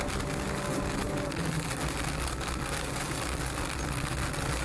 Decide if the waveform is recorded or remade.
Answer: recorded